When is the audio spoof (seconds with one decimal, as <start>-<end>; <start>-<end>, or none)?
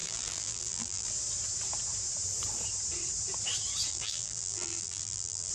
0.0-1.1; 3.9-5.5